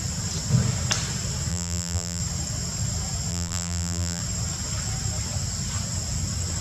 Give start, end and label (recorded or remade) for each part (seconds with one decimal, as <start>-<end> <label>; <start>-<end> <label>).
0.0-1.5 recorded; 1.5-2.2 remade; 2.2-3.3 recorded; 3.3-4.2 remade; 4.2-6.6 recorded